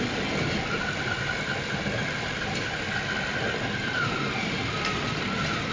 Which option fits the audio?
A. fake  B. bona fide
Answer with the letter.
B